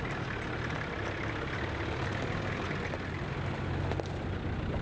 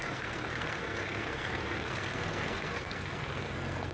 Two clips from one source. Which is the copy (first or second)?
second